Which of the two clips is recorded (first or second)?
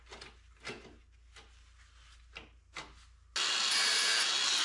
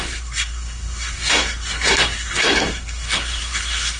first